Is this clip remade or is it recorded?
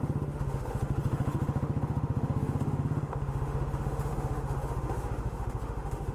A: remade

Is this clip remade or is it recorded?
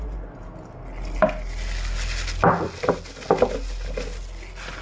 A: recorded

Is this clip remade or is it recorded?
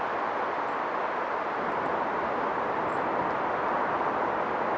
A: recorded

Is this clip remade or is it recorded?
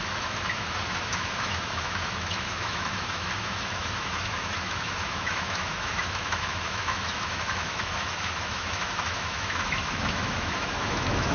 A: remade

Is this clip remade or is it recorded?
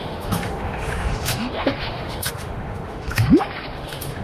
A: remade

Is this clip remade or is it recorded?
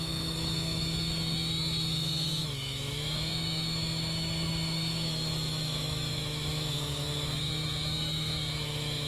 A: remade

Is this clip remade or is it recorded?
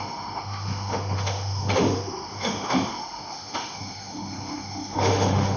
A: remade